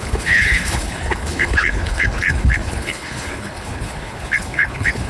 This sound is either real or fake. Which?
fake